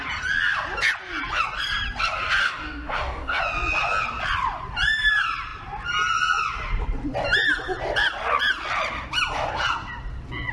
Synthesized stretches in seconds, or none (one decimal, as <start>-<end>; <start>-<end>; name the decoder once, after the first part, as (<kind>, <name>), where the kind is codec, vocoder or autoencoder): 2.4-3.4 (codec, DAC)